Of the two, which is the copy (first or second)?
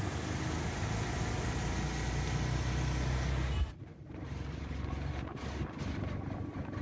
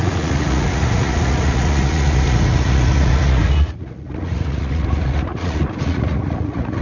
second